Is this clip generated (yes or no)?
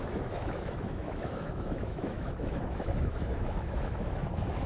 yes